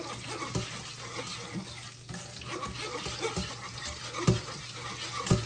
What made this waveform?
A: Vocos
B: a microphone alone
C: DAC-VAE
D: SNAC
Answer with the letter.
B